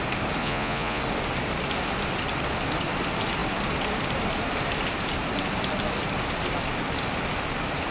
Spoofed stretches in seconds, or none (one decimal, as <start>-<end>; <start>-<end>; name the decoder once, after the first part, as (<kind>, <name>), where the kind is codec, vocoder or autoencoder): 0.4-1.0 (vocoder, Vocos)